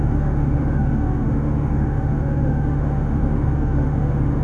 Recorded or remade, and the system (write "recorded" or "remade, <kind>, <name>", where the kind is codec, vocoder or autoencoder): remade, autoencoder, DAC-VAE